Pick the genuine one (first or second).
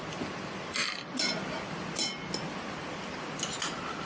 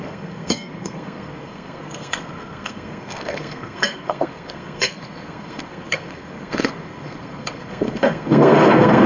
first